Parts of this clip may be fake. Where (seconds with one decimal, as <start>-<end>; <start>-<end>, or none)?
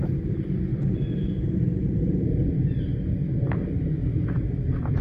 0.7-2.0; 4.0-4.6